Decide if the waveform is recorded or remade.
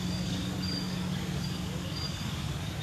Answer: remade